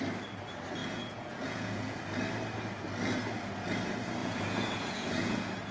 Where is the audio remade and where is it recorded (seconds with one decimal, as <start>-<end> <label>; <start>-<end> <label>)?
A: 0.0-0.8 recorded; 0.8-2.0 remade; 2.0-4.2 recorded; 4.2-5.7 remade